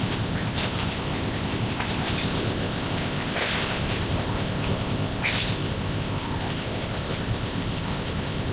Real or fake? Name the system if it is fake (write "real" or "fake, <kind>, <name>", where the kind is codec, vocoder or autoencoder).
fake, codec, ZipCodec